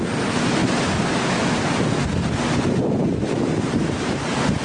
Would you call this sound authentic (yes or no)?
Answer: yes